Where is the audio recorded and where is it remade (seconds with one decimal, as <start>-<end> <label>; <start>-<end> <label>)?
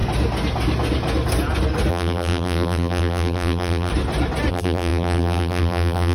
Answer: 0.0-1.9 recorded; 1.9-3.9 remade; 3.9-4.5 recorded; 4.5-6.1 remade